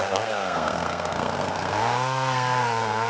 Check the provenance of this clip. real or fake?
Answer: fake